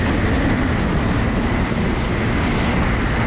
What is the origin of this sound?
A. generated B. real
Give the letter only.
B